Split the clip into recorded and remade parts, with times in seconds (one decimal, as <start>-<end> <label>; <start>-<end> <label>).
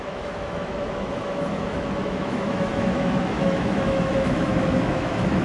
0.0-5.4 remade